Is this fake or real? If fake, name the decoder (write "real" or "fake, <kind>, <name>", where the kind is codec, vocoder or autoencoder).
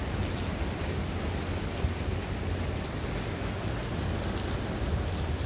real